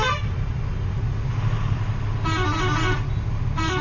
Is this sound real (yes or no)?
yes